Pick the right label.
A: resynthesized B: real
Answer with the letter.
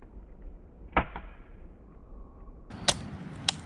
B